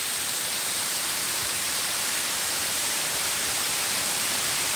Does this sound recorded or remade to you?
remade